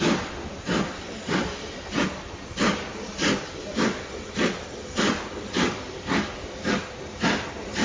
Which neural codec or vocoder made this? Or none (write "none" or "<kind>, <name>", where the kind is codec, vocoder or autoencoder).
none